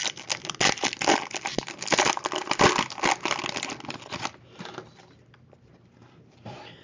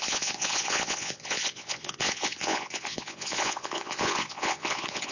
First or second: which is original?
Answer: first